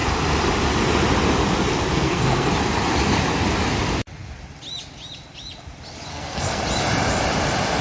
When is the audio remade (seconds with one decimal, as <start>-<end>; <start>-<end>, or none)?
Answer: 1.9-2.5; 6.1-6.6